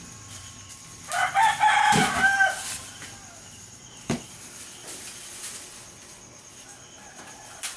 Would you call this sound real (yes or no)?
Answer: yes